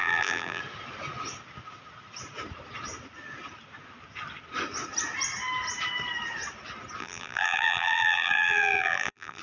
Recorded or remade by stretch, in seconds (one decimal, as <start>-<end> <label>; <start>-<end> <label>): 0.0-0.6 remade; 0.6-7.0 recorded; 7.0-9.4 remade